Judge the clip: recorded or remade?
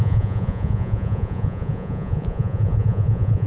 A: remade